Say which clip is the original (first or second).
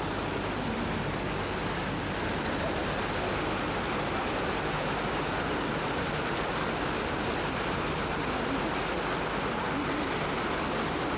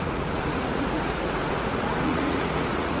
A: first